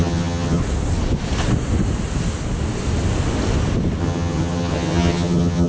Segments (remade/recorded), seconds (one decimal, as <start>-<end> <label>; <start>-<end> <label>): 0.0-0.6 remade; 0.6-4.0 recorded; 4.0-5.7 remade